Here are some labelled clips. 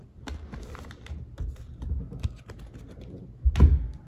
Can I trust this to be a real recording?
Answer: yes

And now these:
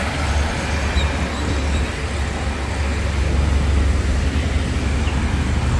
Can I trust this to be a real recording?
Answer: yes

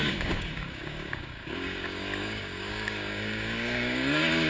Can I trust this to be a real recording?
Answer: no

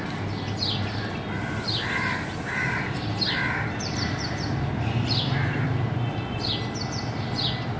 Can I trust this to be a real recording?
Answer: yes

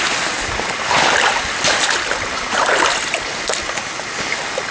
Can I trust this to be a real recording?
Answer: yes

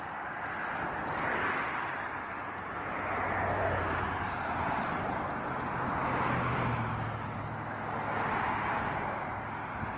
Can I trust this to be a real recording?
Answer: yes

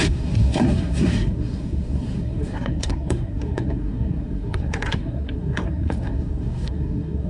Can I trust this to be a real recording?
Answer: no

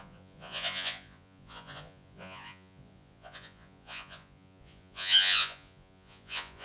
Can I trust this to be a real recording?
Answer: no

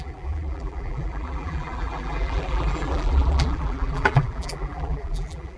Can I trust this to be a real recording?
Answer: no